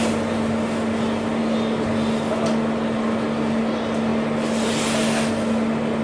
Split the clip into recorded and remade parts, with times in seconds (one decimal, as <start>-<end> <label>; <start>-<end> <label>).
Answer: 0.0-6.0 recorded